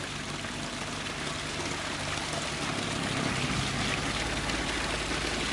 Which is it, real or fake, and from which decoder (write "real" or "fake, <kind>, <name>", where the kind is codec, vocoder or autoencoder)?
real